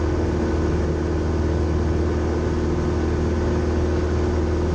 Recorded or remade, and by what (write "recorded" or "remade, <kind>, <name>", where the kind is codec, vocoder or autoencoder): recorded